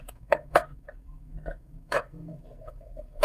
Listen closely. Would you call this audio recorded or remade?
remade